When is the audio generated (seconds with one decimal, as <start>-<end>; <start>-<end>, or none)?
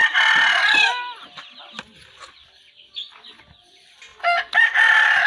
none